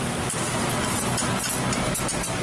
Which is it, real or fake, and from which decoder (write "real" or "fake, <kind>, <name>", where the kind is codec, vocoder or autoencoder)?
real